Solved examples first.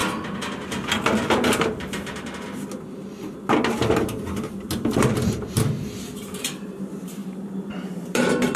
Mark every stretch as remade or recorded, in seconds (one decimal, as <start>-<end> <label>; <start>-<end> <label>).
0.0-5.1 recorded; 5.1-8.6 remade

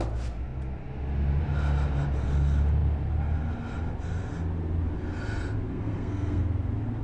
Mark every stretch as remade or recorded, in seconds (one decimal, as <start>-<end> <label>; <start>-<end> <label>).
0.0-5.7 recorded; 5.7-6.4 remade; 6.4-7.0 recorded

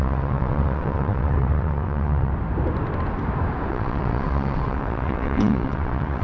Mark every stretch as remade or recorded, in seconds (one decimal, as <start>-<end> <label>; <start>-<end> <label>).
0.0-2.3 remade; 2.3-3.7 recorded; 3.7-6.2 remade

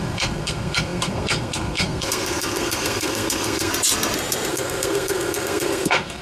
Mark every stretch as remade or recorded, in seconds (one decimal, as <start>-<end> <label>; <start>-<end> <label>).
0.0-3.7 remade; 3.7-4.5 recorded; 4.5-6.2 remade

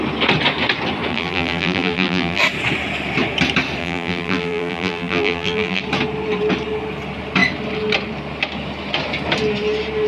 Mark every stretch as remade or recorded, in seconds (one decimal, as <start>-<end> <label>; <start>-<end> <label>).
0.0-1.1 recorded; 1.1-2.4 remade; 2.4-3.8 recorded; 3.8-5.8 remade; 5.8-10.1 recorded